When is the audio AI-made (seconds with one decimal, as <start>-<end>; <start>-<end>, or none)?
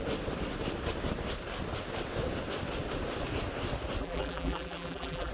4.0-5.3